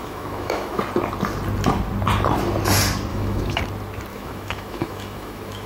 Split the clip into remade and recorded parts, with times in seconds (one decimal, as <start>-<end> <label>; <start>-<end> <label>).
0.0-0.8 remade; 0.8-3.1 recorded; 3.1-3.6 remade; 3.6-4.1 recorded; 4.1-5.7 remade